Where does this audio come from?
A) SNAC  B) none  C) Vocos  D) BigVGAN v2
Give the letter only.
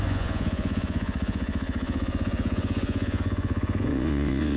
C